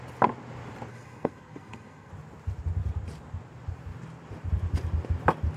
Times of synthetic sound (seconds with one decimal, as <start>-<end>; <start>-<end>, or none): 0.9-2.1